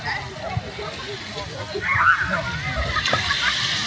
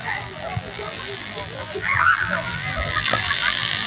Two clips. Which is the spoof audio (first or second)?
second